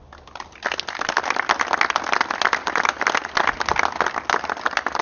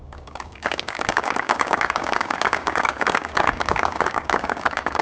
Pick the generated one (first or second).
second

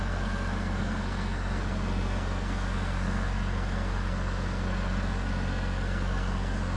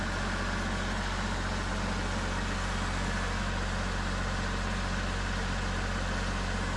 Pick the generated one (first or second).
first